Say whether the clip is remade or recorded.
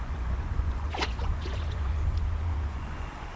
remade